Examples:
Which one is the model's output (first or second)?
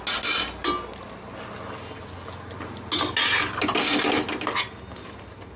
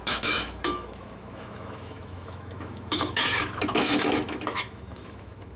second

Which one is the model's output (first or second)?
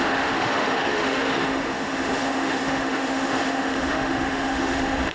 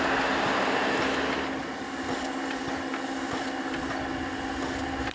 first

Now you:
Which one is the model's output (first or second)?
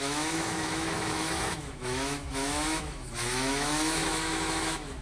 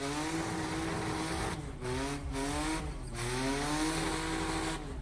first